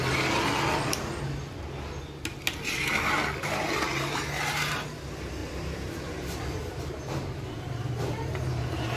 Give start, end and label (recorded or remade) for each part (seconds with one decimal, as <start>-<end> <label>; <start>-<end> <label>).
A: 0.0-5.4 recorded; 5.4-9.0 remade